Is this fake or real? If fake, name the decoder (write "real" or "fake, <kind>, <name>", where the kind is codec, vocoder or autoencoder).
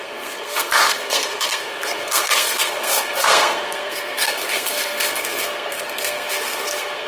fake, codec, SNAC